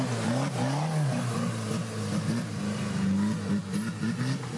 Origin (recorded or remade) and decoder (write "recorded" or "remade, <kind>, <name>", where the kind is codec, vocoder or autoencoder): recorded